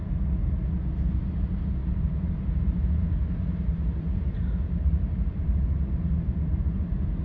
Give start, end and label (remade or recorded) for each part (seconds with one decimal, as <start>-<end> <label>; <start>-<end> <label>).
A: 0.0-1.8 recorded; 1.8-6.1 remade; 6.1-7.2 recorded